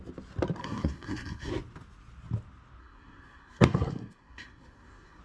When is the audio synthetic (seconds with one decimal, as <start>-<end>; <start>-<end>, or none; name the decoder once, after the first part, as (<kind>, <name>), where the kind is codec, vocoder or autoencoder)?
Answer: 0.6-1.5 (codec, SNAC); 2.8-5.2